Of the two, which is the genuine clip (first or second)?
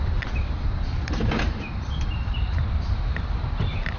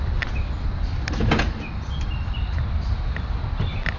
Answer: second